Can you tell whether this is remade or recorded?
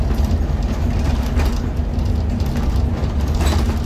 recorded